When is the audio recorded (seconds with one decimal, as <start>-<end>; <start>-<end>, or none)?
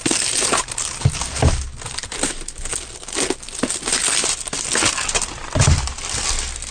0.0-6.7